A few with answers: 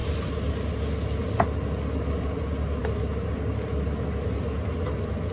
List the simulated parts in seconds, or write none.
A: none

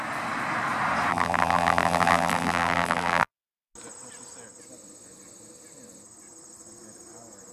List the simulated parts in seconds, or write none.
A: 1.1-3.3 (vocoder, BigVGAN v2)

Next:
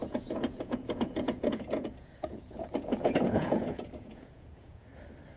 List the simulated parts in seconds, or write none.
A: 0.0-4.9 (vocoder, Vocos)

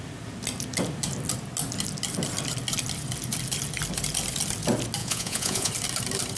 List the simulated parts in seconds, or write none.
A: 5.0-5.7 (vocoder, Vocos)